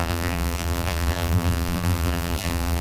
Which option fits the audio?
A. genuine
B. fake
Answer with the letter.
B